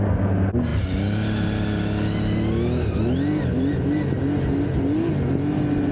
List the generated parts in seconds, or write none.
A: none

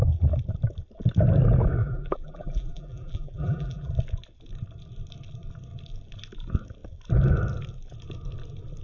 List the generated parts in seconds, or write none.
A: 1.8-3.9 (vocoder, BigVGAN v2)

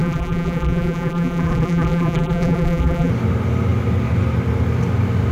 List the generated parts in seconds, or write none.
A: 0.0-3.1 (vocoder, BigVGAN v2)

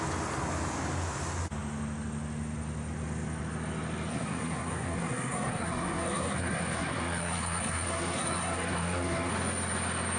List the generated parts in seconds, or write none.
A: 4.1-9.3 (codec, SNAC)

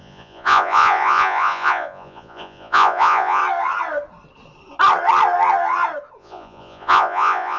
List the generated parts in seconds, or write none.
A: 0.0-3.4 (vocoder, Vocos); 6.2-7.6

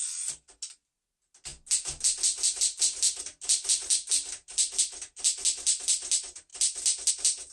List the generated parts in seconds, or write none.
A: none

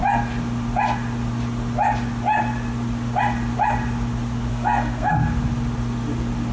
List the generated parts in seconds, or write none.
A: 4.5-5.1 (codec, SNAC)

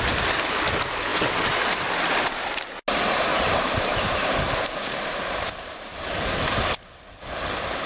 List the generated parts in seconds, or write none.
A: 3.3-6.4 (vocoder, BigVGAN v2)